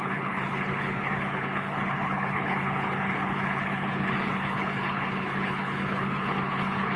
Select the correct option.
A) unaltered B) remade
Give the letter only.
B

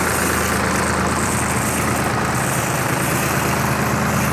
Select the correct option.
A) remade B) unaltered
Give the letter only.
B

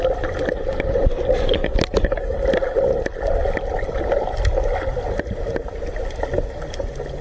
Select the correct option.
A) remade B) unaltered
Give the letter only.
B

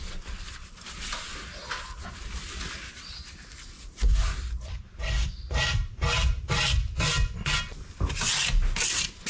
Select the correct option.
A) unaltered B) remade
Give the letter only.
A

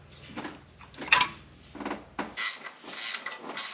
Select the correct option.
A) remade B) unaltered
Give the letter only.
B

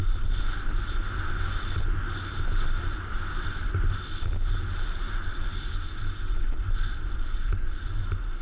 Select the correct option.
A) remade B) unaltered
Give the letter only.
B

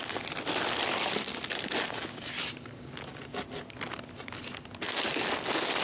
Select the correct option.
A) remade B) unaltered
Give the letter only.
B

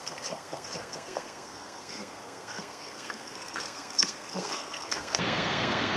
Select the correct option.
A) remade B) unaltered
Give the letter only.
A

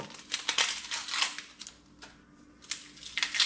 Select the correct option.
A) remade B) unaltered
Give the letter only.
B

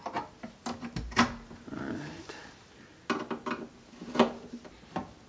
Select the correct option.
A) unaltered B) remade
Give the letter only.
A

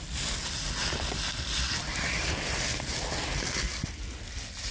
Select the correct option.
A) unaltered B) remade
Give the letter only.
A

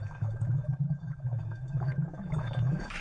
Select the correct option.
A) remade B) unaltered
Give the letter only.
A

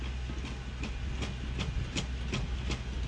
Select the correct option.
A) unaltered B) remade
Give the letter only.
A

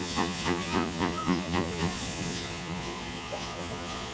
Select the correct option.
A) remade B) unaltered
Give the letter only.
A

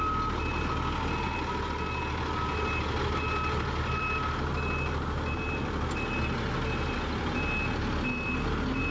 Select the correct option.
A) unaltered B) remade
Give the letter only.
A